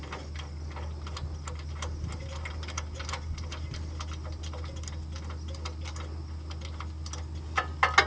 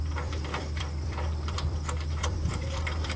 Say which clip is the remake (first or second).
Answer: second